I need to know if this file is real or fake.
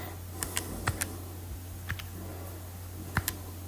real